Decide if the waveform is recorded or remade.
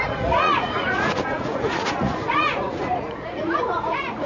remade